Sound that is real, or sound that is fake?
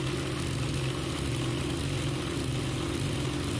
real